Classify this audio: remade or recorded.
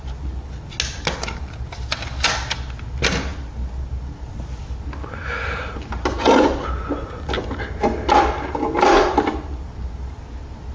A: recorded